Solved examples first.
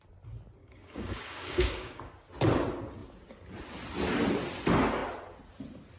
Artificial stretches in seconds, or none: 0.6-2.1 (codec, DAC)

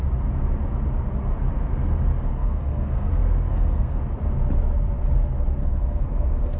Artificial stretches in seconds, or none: 2.3-3.1 (codec, SNAC); 3.5-4.0; 5.6-6.6